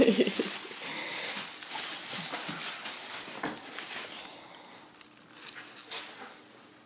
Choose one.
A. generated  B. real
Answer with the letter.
B